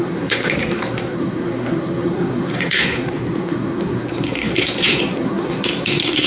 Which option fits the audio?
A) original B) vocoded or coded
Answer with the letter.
B